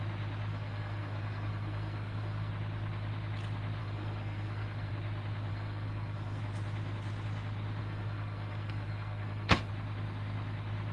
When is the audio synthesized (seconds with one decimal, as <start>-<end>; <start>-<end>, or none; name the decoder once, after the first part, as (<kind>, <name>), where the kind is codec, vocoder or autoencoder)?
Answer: 0.5-2.5 (codec, SNAC); 3.8-4.9; 5.5-6.4; 7.8-9.7